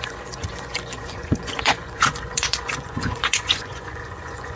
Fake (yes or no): yes